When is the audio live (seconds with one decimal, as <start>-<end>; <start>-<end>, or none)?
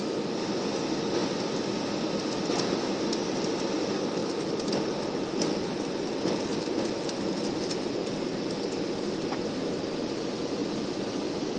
0.0-4.2; 5.8-6.5; 8.0-10.6; 11.2-11.6